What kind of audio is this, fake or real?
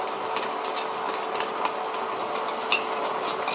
real